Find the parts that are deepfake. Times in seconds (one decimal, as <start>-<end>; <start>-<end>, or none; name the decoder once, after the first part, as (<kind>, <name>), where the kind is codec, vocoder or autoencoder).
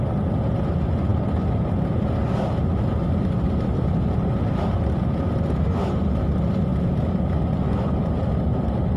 none